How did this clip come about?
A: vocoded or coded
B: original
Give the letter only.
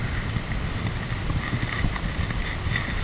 B